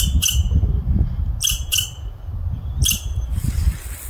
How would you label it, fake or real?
real